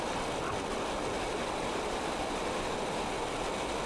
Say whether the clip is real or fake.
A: real